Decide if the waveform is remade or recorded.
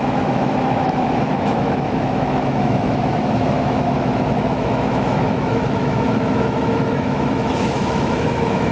remade